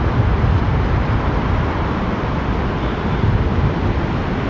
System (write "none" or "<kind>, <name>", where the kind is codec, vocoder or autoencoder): none